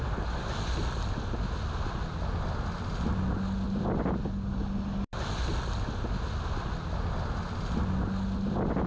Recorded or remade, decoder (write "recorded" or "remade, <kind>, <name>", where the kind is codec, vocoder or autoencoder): recorded